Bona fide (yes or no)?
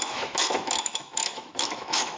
no